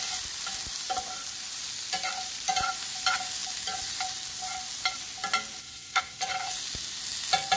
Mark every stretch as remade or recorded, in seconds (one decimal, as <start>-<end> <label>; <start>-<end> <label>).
0.0-5.6 recorded; 5.6-6.2 remade; 6.2-7.6 recorded